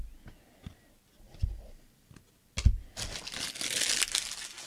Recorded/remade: recorded